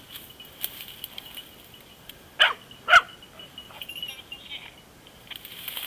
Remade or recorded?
recorded